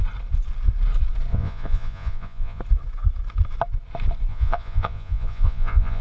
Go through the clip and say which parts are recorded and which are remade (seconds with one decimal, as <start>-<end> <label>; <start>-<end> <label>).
0.0-1.3 recorded; 1.3-2.6 remade; 2.6-4.3 recorded; 4.3-6.0 remade